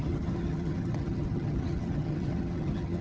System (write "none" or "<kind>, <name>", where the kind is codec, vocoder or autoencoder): vocoder, HiFi-GAN